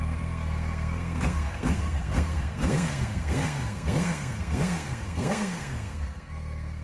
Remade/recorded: remade